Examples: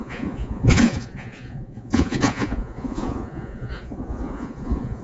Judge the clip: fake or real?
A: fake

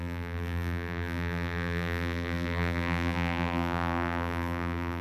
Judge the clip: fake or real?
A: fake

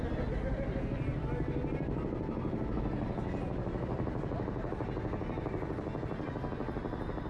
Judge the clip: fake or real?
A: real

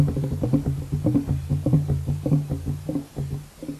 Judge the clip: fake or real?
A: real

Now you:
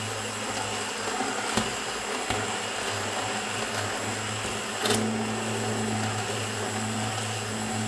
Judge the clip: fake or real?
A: real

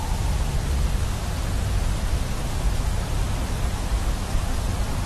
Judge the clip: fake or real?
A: real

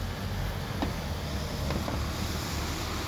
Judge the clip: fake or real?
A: real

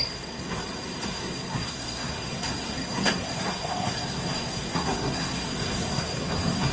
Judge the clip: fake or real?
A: fake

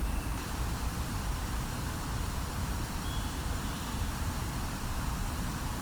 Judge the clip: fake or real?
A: fake